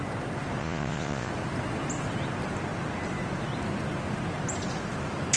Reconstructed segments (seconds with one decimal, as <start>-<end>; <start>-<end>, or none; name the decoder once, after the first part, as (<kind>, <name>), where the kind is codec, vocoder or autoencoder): 0.6-1.3 (vocoder, Vocos)